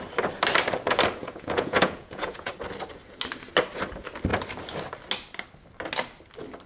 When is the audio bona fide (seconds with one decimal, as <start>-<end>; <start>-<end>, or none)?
0.0-1.2; 2.5-6.7